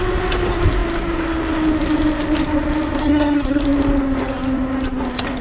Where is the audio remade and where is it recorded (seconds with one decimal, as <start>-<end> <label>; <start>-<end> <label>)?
0.0-3.0 recorded; 3.0-3.6 remade; 3.6-5.4 recorded